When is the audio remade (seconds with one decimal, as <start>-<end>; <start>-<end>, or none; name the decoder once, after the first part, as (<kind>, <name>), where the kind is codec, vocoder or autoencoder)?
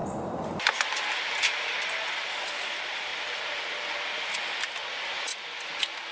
0.0-1.1 (vocoder, BigVGAN v2); 3.1-4.0